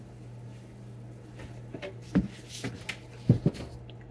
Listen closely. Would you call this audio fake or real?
real